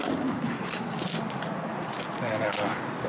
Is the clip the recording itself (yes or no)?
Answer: yes